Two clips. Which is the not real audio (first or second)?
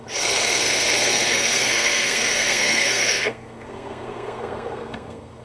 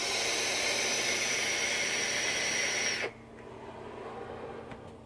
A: first